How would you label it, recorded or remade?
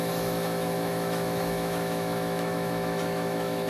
remade